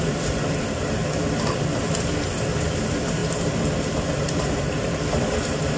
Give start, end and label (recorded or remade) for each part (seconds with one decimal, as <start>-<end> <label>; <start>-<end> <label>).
0.0-1.0 remade; 1.0-2.6 recorded; 2.6-3.2 remade; 3.2-4.3 recorded; 4.3-5.8 remade